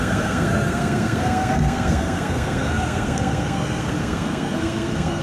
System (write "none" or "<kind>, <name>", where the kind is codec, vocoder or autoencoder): codec, SNAC